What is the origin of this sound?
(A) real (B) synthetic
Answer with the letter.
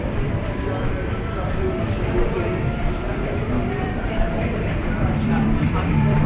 B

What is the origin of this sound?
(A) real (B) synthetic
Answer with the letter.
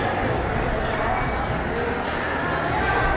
A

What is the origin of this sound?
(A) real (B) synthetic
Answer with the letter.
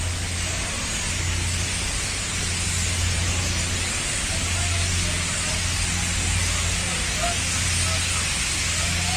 A